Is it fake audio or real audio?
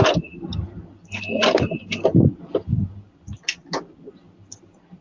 real